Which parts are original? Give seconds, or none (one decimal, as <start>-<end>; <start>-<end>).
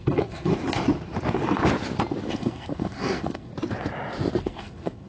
0.5-2.3; 3.5-4.4